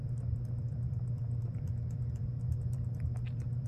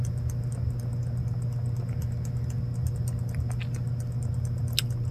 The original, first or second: second